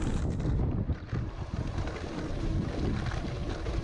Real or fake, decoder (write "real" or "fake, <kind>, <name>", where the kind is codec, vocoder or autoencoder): real